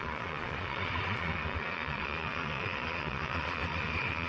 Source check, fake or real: fake